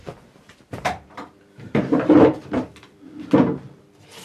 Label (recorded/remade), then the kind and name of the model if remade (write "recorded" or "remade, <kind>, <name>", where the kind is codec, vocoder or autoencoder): remade, vocoder, BigVGAN v2